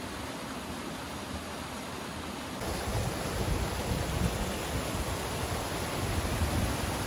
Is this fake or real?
real